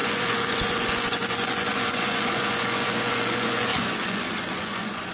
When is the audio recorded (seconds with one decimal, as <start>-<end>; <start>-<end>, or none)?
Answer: none